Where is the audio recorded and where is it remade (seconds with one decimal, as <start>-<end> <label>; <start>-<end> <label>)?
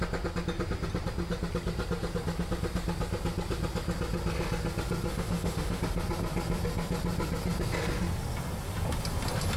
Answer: 0.0-5.1 recorded; 5.1-5.8 remade; 5.8-9.6 recorded